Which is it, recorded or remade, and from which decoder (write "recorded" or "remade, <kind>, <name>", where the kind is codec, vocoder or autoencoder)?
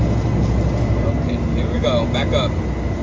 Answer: recorded